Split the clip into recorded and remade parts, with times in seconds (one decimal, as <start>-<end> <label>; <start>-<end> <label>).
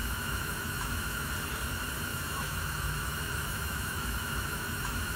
0.0-1.3 remade; 1.3-2.1 recorded; 2.1-5.2 remade